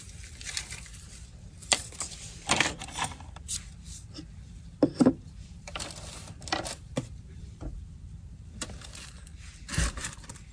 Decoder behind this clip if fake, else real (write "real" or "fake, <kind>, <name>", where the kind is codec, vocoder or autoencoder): fake, vocoder, BigVGAN v2